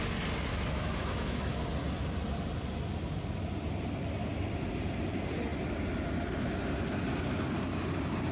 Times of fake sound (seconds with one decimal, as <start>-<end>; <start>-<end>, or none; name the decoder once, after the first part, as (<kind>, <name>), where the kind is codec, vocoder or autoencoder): 0.5-1.6 (autoencoder, DAC-VAE)